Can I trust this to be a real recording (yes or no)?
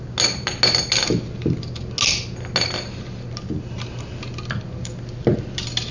yes